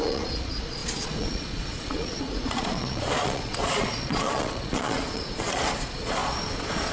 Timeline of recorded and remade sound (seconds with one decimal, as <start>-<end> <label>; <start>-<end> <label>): 0.0-6.9 remade